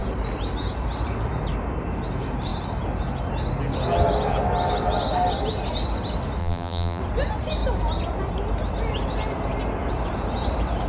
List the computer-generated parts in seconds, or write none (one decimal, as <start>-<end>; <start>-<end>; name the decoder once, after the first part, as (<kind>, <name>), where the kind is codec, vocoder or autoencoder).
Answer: 6.4-7.0 (vocoder, BigVGAN v2)